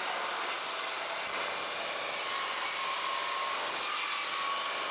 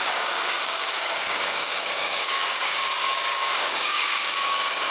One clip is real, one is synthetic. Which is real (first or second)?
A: first